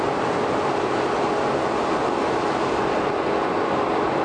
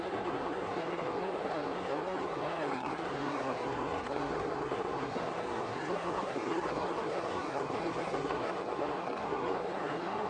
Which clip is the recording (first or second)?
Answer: first